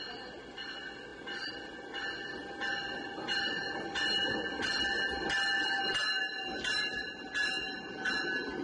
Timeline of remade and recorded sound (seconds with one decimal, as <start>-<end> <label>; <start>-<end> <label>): 0.0-8.6 recorded